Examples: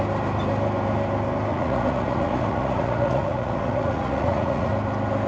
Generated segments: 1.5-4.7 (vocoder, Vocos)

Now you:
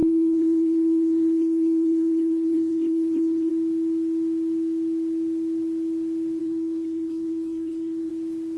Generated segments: 0.0-3.5 (codec, SNAC); 6.4-8.1

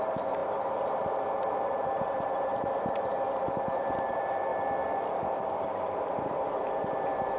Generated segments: 0.0-4.5 (vocoder, BigVGAN v2); 5.1-7.4

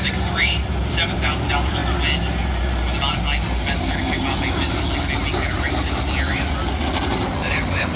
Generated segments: 0.0-1.8 (vocoder, BigVGAN v2); 6.2-8.0

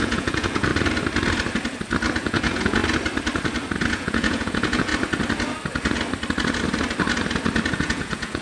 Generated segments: 0.0-0.7 (vocoder, Vocos); 2.1-2.8; 3.9-4.9; 7.7-8.4